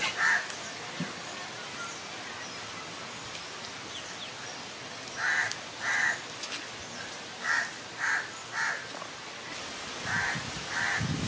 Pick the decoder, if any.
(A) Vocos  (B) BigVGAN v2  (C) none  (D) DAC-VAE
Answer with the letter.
C